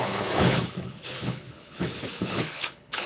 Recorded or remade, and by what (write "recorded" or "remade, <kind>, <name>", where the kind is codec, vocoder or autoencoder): remade, codec, HILCodec